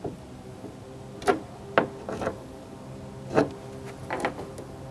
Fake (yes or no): no